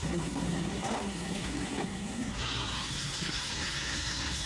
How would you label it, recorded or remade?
remade